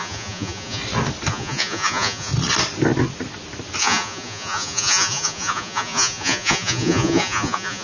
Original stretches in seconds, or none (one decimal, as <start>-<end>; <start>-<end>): 0.8-1.3; 2.3-3.8